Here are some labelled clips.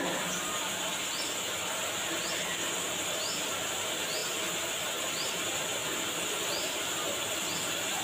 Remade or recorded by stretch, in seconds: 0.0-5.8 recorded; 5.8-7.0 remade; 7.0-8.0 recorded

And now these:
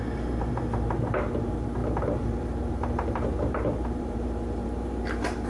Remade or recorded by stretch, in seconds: 0.0-5.5 remade